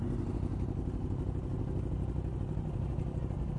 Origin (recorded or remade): recorded